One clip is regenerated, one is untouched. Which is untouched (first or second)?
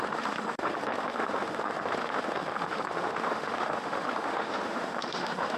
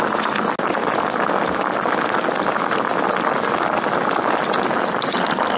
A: second